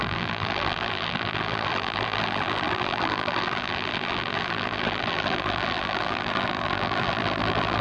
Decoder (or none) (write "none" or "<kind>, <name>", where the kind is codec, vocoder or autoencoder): vocoder, BigVGAN v2